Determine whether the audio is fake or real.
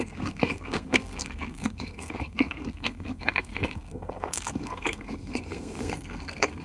fake